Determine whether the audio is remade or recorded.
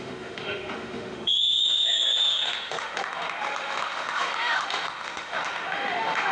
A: remade